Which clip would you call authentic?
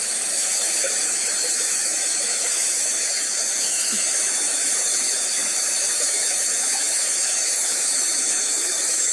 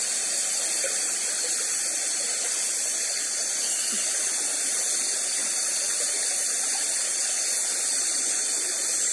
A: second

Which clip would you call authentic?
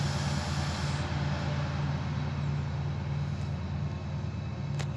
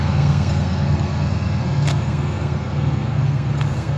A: first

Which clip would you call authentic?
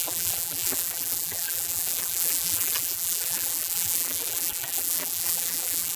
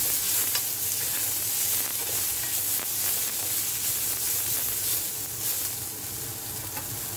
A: second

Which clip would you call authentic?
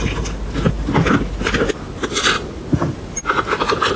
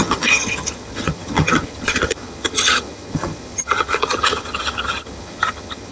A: first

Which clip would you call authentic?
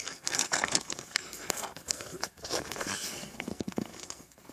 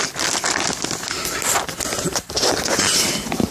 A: second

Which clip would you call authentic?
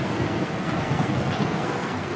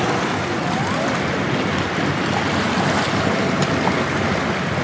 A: second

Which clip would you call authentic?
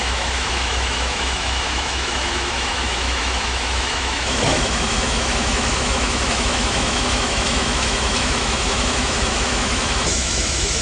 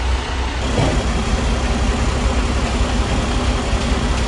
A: second